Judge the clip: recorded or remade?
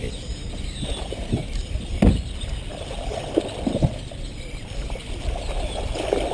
recorded